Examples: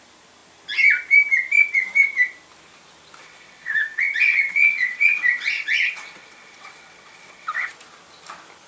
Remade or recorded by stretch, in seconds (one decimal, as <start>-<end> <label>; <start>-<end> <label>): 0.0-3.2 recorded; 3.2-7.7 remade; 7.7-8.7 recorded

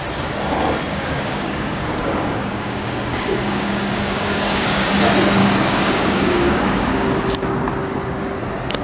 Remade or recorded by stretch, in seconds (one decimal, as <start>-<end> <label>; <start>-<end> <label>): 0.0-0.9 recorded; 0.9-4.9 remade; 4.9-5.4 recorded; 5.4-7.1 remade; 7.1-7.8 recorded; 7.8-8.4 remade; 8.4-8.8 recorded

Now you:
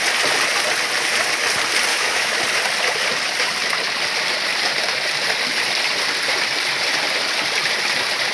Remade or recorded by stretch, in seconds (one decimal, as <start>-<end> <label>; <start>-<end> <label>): 0.0-1.9 recorded; 1.9-2.4 remade; 2.4-8.3 recorded